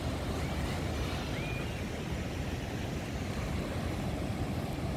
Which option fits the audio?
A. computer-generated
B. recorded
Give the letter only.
B